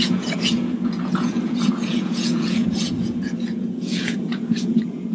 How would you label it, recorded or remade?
remade